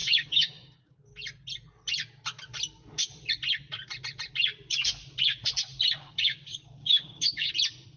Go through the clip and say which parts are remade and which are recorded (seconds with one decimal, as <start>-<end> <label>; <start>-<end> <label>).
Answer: 0.0-1.1 remade; 1.1-6.0 recorded; 6.0-7.5 remade; 7.5-8.0 recorded